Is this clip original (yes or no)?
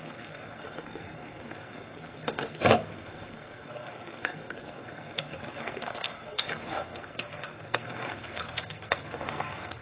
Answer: no